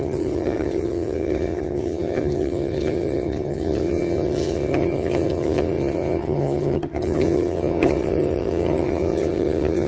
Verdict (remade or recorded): remade